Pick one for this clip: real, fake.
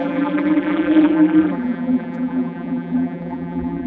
fake